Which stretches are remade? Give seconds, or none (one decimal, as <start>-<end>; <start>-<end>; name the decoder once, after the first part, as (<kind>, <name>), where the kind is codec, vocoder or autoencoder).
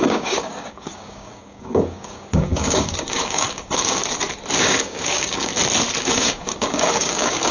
0.0-4.0 (codec, DAC); 4.6-5.5; 6.0-7.5